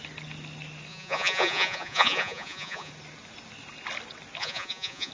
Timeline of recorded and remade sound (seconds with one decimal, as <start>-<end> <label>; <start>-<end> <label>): 0.0-0.9 recorded; 0.9-2.9 remade; 2.9-4.4 recorded; 4.4-5.1 remade